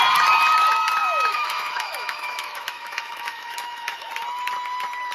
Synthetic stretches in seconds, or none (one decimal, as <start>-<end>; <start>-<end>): 1.0-4.1